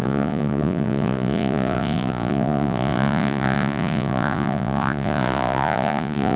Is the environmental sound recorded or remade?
remade